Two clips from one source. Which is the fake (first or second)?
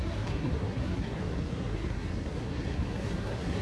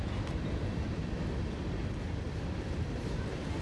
first